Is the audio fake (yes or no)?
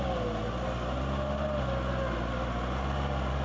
no